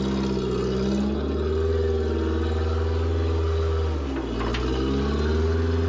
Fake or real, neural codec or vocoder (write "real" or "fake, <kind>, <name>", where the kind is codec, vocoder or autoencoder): real